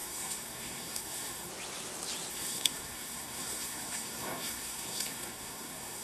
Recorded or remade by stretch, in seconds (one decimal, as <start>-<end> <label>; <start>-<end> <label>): 0.0-1.5 remade; 1.5-2.3 recorded; 2.3-6.0 remade